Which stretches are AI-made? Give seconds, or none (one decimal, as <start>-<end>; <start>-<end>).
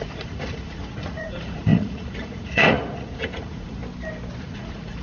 0.0-3.8; 4.4-5.0